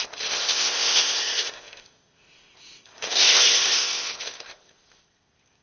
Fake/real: fake